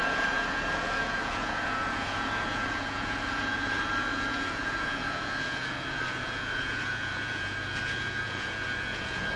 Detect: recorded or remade remade